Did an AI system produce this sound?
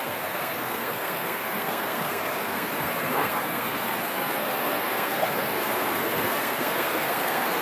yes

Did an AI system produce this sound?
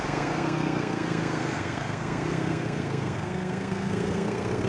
yes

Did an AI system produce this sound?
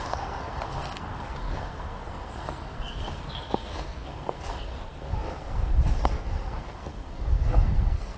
yes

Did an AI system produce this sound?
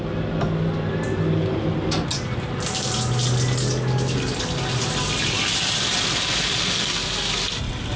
no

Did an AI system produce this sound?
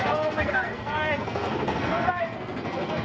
yes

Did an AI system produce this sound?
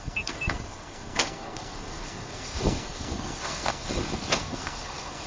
yes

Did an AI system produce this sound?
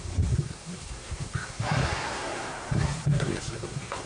yes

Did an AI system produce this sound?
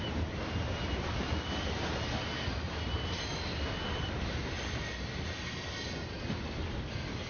no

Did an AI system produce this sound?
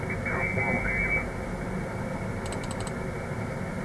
no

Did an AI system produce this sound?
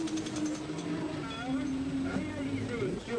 no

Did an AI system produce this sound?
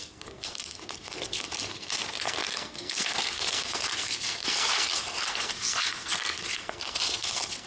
yes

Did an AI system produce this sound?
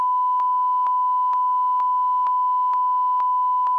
no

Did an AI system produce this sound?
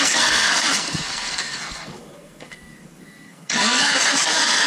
yes